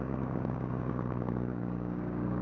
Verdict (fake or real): fake